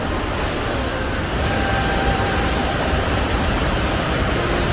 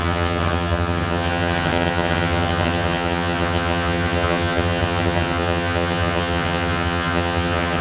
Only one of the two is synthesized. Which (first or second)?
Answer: second